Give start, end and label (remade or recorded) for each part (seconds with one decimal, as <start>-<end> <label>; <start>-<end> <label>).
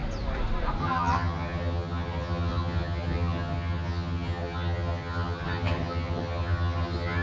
0.0-0.8 recorded; 0.8-7.2 remade